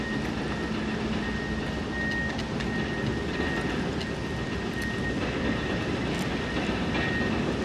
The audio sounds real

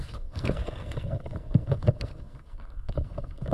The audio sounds fake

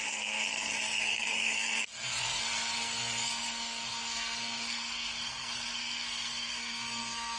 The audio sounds fake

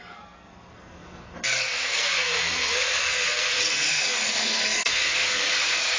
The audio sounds fake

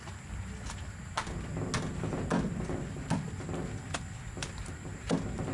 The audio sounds real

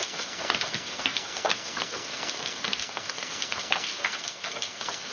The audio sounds fake